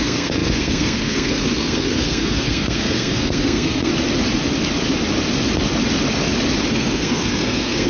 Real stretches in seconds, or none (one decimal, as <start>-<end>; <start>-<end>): 3.9-6.7